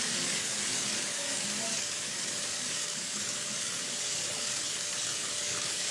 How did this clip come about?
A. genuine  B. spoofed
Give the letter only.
B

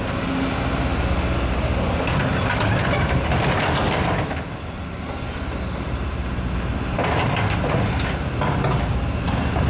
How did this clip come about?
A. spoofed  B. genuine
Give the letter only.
B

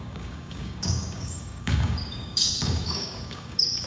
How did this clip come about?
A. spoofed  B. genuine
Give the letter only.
A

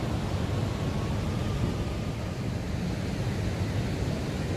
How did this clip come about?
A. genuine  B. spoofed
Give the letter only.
A